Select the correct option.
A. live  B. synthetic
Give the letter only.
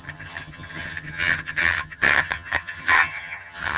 B